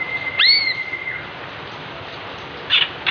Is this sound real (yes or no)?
yes